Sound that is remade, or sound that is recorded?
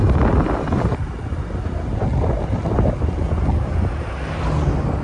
recorded